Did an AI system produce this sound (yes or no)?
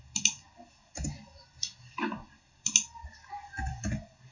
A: no